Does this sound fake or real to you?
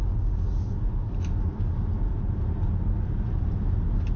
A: real